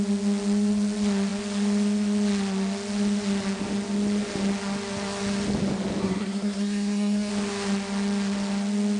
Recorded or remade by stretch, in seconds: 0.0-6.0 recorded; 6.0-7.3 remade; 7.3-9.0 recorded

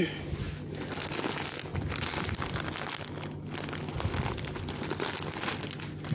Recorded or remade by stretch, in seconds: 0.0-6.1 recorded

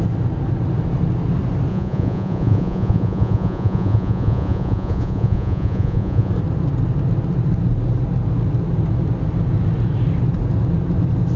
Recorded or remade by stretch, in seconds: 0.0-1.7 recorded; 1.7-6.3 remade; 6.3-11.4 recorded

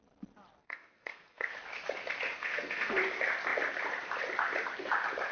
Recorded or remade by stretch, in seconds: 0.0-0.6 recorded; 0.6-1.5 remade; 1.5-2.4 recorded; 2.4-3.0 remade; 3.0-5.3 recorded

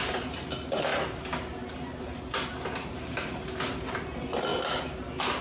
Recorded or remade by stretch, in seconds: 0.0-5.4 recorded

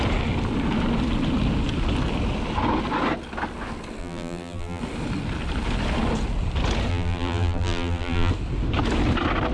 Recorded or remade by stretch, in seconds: 0.0-4.0 recorded; 4.0-4.8 remade; 4.8-6.9 recorded; 6.9-8.3 remade; 8.3-9.5 recorded